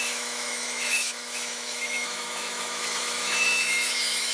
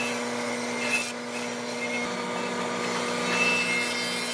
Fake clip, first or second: first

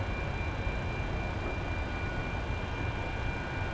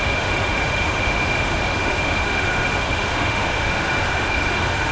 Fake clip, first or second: second